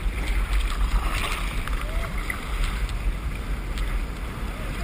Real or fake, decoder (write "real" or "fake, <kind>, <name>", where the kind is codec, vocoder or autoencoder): real